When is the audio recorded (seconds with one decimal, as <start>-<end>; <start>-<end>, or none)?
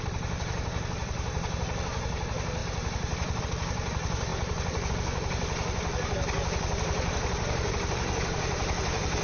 none